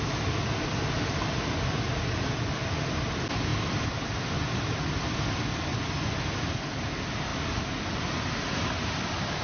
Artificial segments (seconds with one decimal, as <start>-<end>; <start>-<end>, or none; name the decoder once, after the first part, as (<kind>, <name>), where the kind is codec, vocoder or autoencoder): none